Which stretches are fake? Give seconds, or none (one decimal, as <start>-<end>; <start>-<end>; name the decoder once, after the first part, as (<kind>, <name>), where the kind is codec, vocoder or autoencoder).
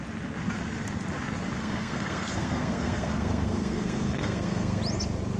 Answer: 1.6-4.8 (codec, SNAC)